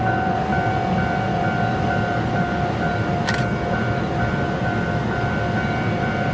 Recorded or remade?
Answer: recorded